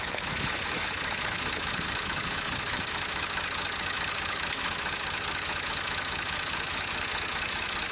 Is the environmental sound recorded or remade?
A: remade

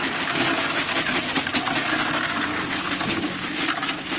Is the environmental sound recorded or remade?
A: recorded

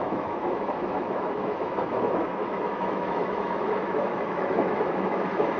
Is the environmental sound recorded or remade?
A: remade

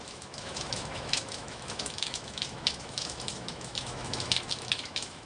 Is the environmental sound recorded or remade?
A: remade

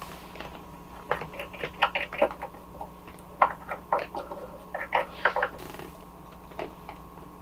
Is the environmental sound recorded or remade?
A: recorded